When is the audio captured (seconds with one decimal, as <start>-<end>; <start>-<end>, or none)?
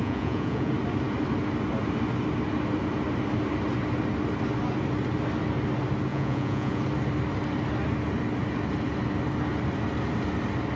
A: 0.7-6.1; 6.8-10.8